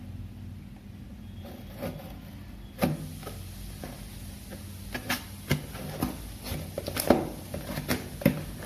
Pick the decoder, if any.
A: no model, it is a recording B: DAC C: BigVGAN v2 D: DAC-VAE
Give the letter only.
A